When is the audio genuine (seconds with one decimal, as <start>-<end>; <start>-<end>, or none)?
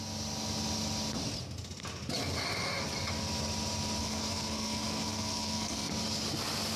0.0-4.0; 5.9-6.8